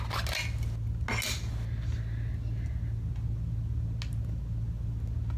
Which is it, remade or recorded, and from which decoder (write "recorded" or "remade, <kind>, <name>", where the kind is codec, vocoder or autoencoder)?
recorded